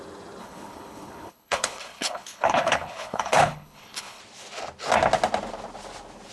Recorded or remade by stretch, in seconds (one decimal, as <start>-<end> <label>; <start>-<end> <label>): 0.0-0.4 recorded; 0.4-4.2 remade; 4.2-6.3 recorded